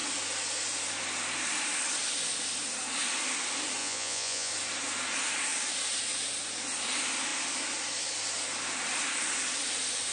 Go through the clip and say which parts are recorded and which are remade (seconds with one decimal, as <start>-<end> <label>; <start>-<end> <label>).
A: 0.0-3.8 recorded; 3.8-4.5 remade; 4.5-10.1 recorded